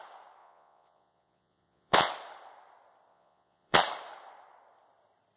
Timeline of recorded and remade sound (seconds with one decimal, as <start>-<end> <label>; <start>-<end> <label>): 0.0-0.4 recorded; 0.4-2.1 remade; 2.1-3.1 recorded; 3.1-3.8 remade; 3.8-5.4 recorded